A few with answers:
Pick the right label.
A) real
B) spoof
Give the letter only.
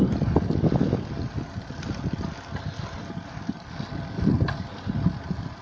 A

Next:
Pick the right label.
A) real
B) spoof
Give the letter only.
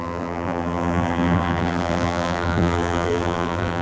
B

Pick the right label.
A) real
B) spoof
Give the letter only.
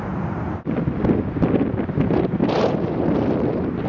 A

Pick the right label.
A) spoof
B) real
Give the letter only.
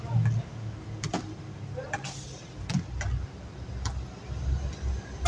B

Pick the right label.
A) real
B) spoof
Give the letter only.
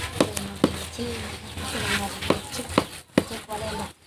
A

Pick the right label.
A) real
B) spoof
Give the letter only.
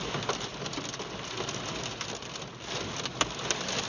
A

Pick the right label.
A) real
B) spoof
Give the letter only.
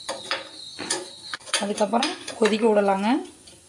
B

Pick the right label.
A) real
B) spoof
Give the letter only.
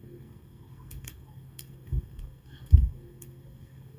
B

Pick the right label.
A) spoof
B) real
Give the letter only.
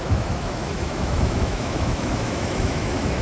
A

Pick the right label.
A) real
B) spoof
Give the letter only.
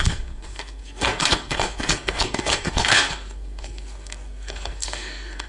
B